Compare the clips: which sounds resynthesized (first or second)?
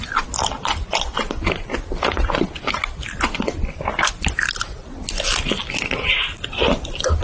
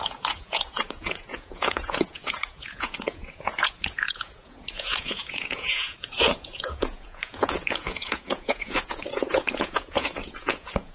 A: second